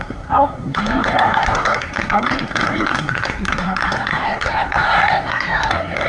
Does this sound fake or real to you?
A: fake